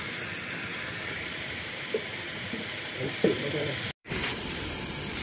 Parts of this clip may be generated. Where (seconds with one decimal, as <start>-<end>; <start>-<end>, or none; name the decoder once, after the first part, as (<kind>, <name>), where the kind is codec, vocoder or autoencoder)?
0.7-3.0 (vocoder, BigVGAN v2); 4.0-4.8